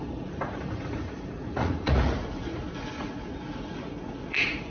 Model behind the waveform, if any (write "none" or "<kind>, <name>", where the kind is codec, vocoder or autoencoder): vocoder, Vocos